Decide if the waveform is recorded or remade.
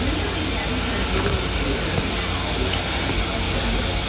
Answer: recorded